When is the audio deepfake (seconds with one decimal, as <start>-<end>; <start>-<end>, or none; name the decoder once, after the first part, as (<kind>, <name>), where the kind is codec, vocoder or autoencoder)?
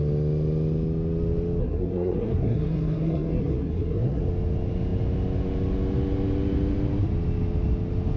1.6-4.2 (codec, SNAC)